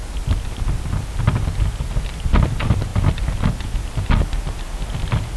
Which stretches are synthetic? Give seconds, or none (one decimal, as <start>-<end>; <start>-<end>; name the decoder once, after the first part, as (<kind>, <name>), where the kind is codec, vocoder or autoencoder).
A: none